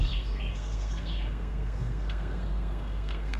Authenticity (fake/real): fake